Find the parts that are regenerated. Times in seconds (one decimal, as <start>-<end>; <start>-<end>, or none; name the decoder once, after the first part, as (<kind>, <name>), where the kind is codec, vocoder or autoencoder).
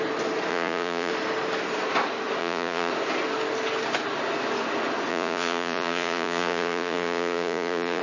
0.5-1.1 (vocoder, Vocos); 2.4-2.9; 5.1-8.0